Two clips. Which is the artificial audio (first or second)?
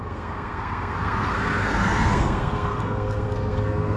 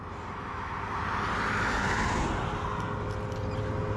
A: first